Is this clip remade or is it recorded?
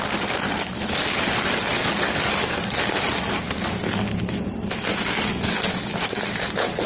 recorded